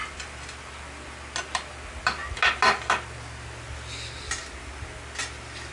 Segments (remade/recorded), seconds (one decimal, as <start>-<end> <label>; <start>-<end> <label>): 0.0-5.7 recorded